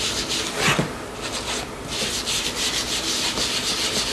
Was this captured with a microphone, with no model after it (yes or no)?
yes